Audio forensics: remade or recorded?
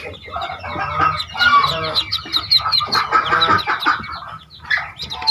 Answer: recorded